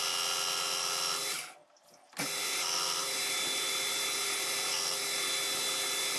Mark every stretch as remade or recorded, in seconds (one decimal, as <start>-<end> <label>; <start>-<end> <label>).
0.0-6.2 recorded